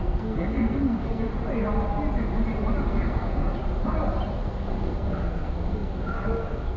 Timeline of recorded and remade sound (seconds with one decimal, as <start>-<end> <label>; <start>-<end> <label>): 0.0-1.3 remade; 1.3-2.9 recorded; 2.9-3.6 remade; 3.6-4.4 recorded; 4.4-6.8 remade